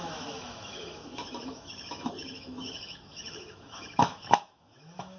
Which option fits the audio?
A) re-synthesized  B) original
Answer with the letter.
A